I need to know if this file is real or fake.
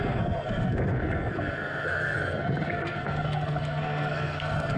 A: fake